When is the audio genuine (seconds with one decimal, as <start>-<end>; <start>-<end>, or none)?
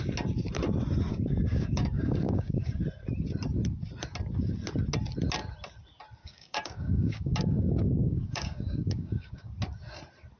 0.0-1.1; 2.8-6.2; 9.5-10.4